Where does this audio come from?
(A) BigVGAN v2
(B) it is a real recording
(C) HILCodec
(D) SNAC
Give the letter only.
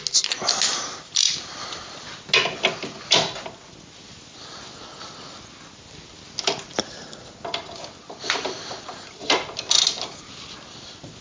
B